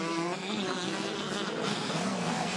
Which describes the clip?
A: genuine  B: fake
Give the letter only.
B